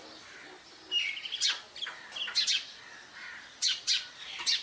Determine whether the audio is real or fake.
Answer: real